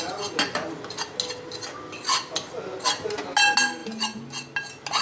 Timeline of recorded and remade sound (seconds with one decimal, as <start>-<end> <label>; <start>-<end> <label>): 0.0-5.0 recorded